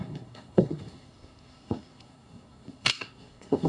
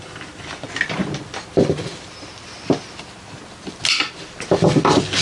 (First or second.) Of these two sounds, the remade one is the first